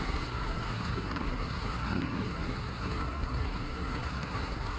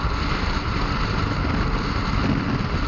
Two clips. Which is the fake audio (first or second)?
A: first